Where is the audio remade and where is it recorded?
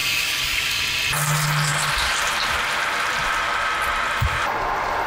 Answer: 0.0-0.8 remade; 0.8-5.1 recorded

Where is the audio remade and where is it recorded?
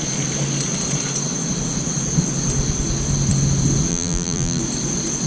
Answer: 0.0-3.9 recorded; 3.9-4.6 remade; 4.6-5.3 recorded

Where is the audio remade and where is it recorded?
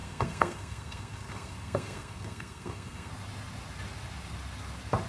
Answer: 0.0-3.1 remade; 3.1-5.1 recorded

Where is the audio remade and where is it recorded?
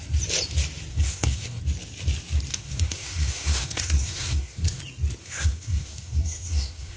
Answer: 0.0-0.9 recorded; 0.9-1.6 remade; 1.6-2.5 recorded; 2.5-4.8 remade; 4.8-5.2 recorded; 5.2-7.0 remade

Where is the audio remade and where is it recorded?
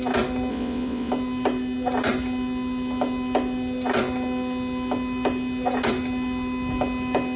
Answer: 0.0-0.5 recorded; 0.5-1.1 remade; 1.1-7.4 recorded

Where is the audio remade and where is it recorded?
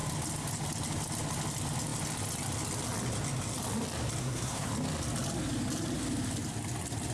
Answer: 0.0-4.2 recorded; 4.2-4.7 remade; 4.7-7.1 recorded